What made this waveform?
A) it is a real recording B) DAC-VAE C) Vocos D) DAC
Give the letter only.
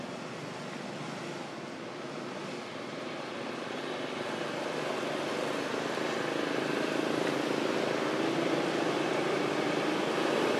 A